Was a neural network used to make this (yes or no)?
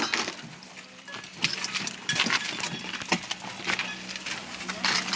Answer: no